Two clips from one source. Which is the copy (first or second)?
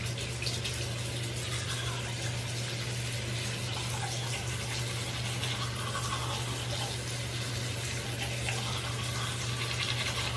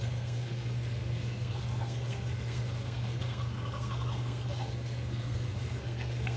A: second